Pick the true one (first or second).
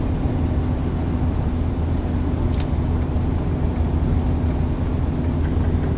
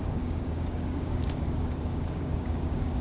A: first